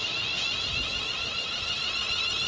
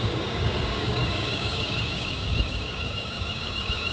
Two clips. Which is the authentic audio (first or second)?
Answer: first